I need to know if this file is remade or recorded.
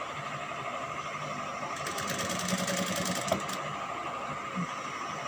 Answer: recorded